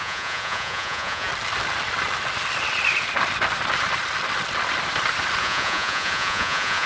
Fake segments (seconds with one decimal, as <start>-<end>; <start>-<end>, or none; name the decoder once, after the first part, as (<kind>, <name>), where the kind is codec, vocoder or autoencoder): 0.0-1.3 (vocoder, Vocos); 5.4-6.9